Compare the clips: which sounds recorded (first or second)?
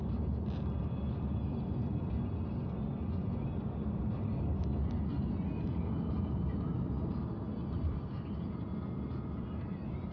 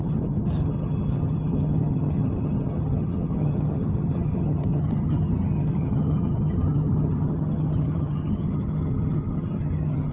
first